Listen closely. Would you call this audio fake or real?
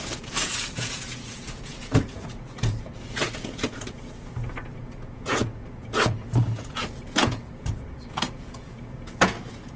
fake